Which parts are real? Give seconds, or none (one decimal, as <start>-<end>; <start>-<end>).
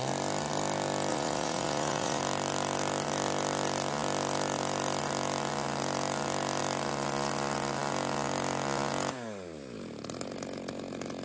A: 0.0-1.1; 2.2-11.2